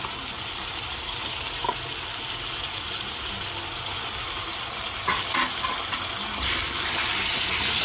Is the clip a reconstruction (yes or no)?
no